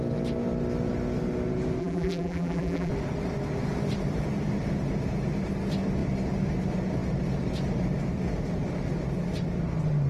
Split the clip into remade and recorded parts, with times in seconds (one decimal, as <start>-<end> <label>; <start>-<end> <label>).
0.0-1.8 recorded; 1.8-2.9 remade; 2.9-10.1 recorded